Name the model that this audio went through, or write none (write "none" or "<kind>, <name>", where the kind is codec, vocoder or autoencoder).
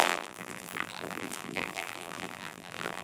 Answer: vocoder, BigVGAN v2